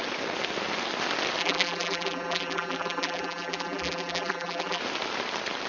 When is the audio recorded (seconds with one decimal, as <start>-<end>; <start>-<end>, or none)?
0.0-1.4; 4.8-5.7